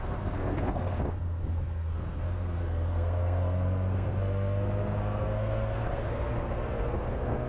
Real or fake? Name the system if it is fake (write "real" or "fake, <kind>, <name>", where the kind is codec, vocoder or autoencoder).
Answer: fake, codec, SNAC